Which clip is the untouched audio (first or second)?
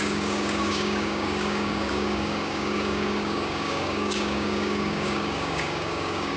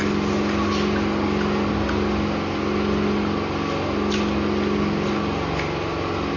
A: second